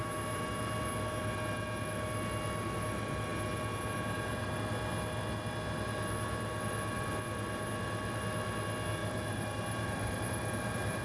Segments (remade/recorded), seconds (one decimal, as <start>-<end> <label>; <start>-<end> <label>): 0.0-9.0 recorded; 9.0-11.0 remade